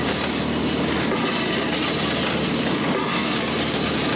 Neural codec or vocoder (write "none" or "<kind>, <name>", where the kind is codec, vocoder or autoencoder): none